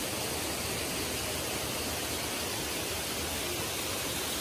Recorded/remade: recorded